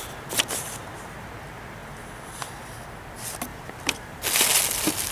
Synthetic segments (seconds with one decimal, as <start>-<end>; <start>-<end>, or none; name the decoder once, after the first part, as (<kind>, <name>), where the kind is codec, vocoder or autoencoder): 3.5-4.2 (vocoder, BigVGAN v2)